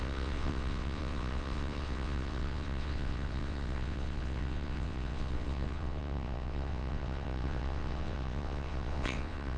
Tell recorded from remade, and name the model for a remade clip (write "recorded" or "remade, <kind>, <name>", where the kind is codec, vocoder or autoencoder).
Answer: remade, vocoder, WaveNeXt